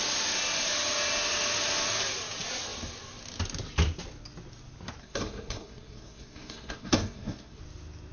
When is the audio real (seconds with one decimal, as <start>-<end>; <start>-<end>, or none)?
0.0-5.0; 7.6-8.1